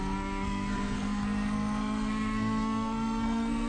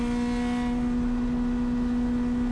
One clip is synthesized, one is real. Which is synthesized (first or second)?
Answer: first